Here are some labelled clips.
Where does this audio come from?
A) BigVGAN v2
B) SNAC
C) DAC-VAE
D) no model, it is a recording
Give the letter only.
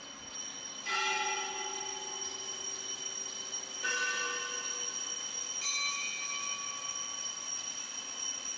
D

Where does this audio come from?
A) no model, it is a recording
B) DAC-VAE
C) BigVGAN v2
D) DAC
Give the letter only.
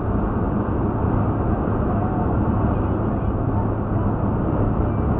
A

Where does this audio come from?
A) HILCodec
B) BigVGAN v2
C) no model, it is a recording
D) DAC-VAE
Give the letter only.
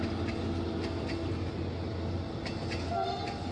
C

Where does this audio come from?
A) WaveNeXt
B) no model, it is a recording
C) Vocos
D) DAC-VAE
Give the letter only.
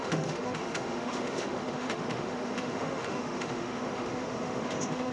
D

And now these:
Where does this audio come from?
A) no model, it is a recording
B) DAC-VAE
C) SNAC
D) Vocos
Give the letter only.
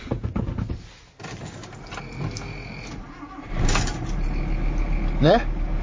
A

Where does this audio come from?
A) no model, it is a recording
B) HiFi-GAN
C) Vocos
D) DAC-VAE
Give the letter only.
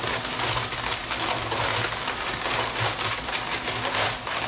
A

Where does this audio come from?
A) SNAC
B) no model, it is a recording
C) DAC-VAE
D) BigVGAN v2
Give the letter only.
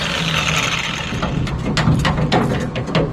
B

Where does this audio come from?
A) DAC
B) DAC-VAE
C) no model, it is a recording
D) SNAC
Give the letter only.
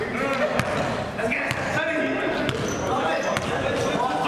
C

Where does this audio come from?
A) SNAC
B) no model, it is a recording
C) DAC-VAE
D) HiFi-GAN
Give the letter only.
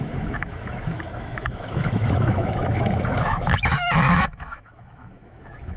C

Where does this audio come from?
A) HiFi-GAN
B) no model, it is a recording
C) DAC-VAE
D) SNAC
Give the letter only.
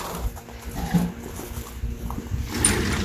B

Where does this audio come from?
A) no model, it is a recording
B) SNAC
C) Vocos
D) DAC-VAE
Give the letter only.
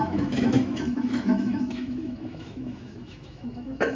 D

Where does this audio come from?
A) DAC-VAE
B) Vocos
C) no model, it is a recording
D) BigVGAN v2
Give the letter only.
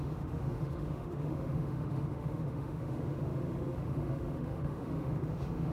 A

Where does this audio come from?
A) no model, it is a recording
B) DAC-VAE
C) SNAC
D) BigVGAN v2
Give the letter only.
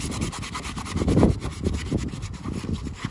A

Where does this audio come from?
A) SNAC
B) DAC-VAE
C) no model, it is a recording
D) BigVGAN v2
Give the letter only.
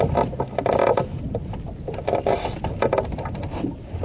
C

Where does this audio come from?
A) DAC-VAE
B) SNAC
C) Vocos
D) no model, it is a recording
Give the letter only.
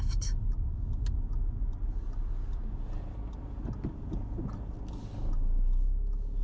D